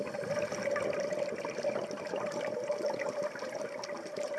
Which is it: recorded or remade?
recorded